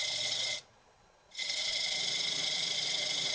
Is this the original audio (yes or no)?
no